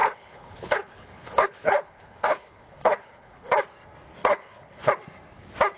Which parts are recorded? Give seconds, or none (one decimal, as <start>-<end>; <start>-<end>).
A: 3.5-4.2; 4.9-5.8

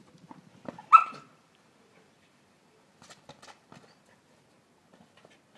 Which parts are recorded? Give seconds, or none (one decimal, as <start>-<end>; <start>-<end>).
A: 0.0-0.8; 4.2-5.6